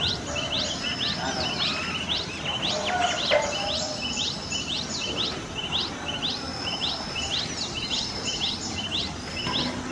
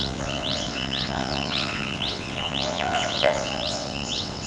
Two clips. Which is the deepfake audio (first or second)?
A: second